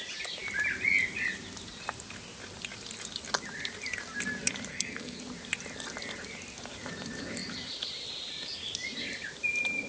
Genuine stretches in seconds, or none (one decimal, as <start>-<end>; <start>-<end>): 0.0-4.7; 5.2-9.9